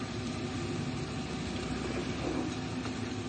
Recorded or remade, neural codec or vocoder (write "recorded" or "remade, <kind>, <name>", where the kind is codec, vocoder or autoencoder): recorded